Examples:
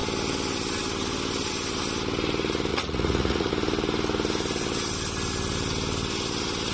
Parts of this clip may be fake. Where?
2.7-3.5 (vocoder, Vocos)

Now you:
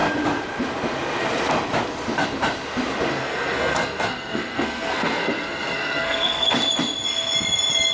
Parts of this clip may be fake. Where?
3.1-6.5 (codec, SNAC)